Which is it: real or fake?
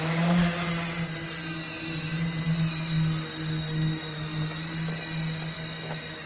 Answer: real